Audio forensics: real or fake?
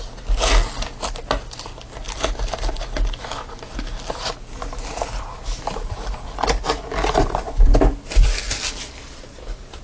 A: real